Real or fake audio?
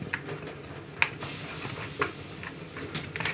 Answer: real